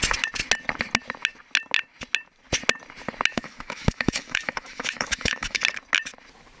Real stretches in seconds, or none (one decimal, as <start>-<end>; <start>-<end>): 0.0-3.3; 5.6-6.6